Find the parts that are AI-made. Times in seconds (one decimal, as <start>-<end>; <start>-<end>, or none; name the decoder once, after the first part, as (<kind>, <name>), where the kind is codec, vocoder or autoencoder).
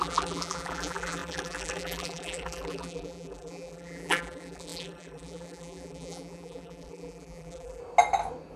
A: 0.0-7.8 (vocoder, BigVGAN v2)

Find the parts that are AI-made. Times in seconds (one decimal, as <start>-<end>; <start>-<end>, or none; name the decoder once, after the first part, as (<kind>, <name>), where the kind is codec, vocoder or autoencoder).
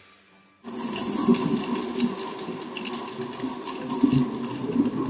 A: none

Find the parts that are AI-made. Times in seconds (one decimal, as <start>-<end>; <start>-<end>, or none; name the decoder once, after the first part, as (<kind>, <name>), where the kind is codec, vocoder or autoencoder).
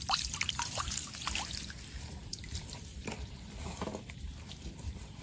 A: 0.0-1.0 (vocoder, BigVGAN v2); 2.0-4.3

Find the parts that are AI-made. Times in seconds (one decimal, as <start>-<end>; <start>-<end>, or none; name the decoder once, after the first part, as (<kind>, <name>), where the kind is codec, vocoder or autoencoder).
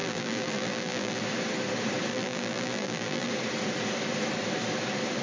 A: 0.0-1.2 (vocoder, BigVGAN v2); 2.1-3.3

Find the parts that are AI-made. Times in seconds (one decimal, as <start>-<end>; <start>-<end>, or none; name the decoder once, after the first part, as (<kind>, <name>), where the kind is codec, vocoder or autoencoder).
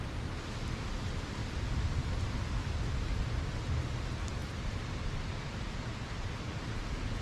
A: 1.4-3.3 (vocoder, BigVGAN v2); 4.4-6.8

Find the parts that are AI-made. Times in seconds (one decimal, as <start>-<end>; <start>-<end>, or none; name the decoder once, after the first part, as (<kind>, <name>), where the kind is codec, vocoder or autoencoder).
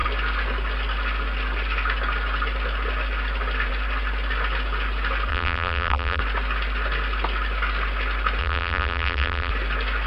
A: 5.3-6.2 (vocoder, BigVGAN v2); 8.4-9.5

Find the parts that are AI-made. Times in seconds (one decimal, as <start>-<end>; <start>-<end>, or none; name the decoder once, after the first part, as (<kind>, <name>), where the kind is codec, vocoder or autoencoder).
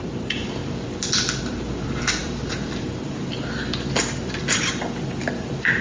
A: 0.0-0.6 (vocoder, BigVGAN v2); 1.4-5.8